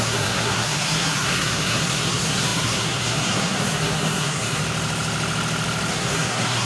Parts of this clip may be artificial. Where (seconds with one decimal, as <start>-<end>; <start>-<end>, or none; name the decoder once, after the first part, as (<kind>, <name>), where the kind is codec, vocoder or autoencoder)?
0.0-4.6 (codec, SNAC); 5.9-6.6